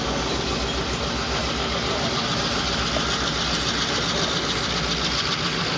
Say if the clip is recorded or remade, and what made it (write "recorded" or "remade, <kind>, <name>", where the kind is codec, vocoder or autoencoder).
recorded